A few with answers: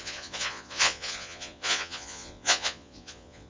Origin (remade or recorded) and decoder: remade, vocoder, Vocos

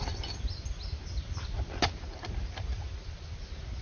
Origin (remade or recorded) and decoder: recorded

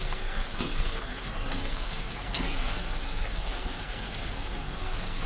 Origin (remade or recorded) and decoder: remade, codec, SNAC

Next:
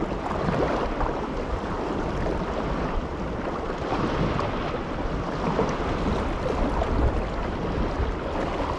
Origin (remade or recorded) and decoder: recorded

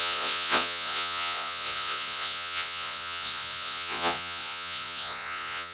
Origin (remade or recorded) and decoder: remade, vocoder, Vocos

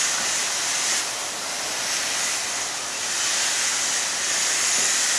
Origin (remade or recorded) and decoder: recorded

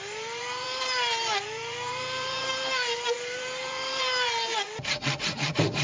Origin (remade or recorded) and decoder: remade, vocoder, BigVGAN v2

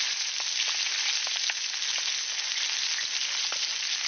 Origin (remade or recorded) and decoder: recorded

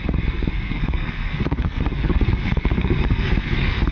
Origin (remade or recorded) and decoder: remade, codec, SNAC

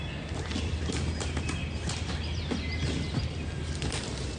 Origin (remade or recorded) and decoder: recorded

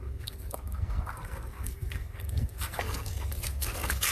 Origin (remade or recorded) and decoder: remade, codec, SNAC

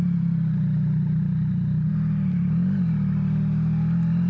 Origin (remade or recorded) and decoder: recorded